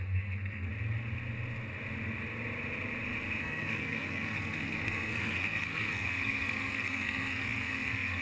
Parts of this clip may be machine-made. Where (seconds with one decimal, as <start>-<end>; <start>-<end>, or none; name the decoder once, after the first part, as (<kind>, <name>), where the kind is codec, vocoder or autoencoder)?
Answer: 0.0-0.7 (codec, SNAC); 3.4-8.2

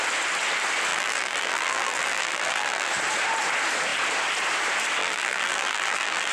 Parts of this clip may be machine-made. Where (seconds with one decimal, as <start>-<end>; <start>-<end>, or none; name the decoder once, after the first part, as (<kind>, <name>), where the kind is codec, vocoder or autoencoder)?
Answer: 0.9-2.9 (vocoder, BigVGAN v2); 5.0-6.3

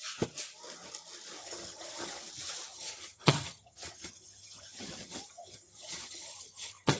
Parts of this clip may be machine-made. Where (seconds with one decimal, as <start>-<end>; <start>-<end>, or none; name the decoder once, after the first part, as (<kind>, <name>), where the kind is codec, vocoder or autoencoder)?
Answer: 1.4-2.2 (vocoder, HiFi-GAN); 2.7-7.0

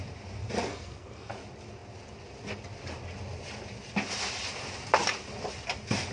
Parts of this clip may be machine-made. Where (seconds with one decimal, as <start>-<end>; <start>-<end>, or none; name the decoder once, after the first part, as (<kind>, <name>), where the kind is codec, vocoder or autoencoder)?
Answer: 0.7-1.3 (codec, SNAC)

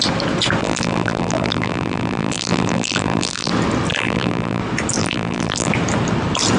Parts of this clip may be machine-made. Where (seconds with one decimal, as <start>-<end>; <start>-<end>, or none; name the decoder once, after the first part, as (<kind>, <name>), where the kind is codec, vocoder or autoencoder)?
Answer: 0.6-3.5 (vocoder, BigVGAN v2); 3.9-4.6; 5.0-5.7

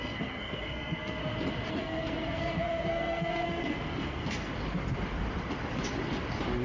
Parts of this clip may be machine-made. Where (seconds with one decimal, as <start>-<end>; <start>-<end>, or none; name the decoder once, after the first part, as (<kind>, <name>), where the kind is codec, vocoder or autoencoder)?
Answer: 0.0-1.2 (codec, SNAC); 1.7-4.5

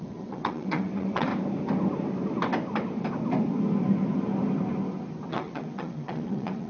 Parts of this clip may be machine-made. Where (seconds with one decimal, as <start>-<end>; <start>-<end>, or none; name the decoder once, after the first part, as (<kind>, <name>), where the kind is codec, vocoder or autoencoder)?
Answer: 0.0-1.3 (vocoder, WaveNeXt); 5.3-6.7